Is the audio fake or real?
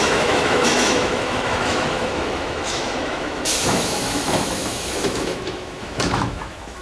fake